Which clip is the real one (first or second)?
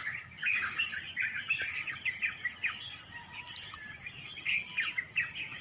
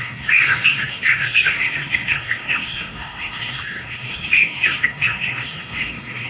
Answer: first